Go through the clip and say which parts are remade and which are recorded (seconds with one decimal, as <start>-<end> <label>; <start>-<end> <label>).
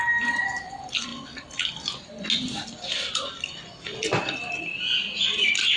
0.0-5.8 recorded